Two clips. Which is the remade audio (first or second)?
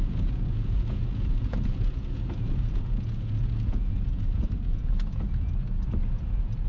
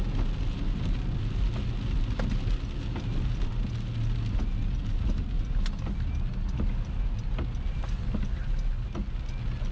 first